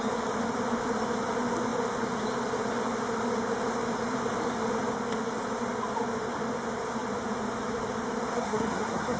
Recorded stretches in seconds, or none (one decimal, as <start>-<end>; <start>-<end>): 0.0-8.3